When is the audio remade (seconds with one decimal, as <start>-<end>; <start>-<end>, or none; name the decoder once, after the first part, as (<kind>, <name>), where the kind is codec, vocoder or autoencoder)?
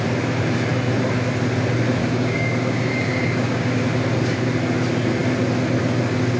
2.0-3.8 (codec, DAC)